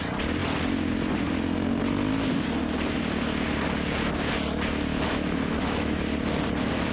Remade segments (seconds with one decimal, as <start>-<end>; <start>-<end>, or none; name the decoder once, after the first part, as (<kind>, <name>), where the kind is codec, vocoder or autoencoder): 4.9-6.0 (autoencoder, DAC-VAE)